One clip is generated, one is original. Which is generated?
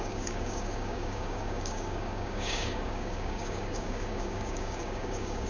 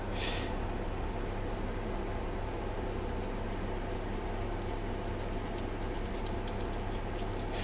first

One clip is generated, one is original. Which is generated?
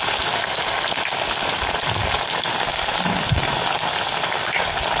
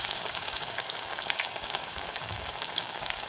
second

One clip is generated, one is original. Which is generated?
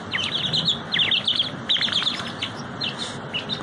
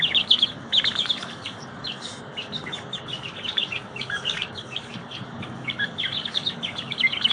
second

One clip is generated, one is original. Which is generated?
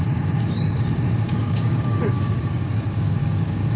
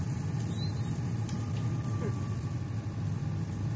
first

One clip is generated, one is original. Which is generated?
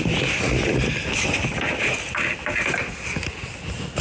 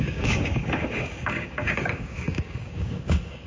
second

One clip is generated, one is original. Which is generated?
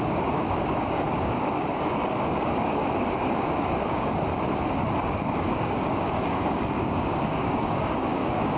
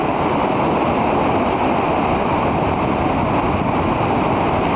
first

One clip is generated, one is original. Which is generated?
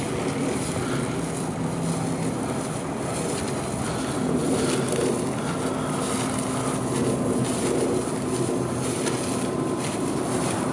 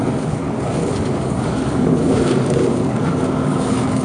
second